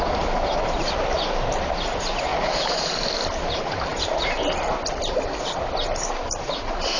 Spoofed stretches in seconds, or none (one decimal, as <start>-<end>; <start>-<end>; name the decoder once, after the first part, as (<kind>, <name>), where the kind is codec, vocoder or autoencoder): none